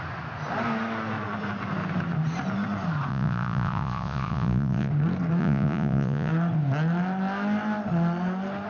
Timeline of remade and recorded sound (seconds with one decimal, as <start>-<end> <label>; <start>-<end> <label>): 0.0-3.1 recorded; 3.1-4.9 remade; 4.9-5.4 recorded; 5.4-6.3 remade; 6.3-8.7 recorded